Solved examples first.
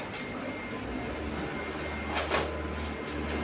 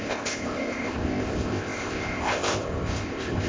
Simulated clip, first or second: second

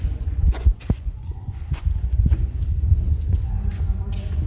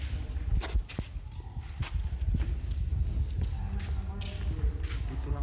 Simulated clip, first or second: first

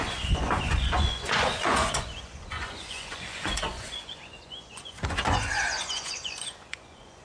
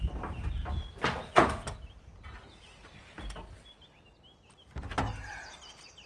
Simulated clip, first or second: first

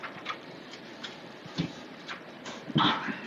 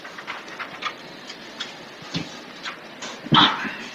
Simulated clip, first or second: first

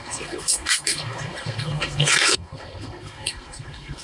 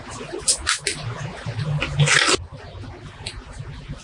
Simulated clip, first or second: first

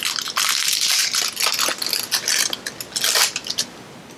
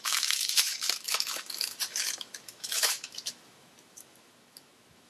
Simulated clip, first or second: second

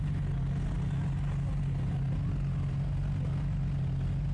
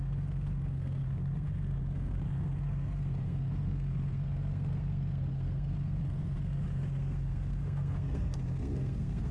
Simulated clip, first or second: second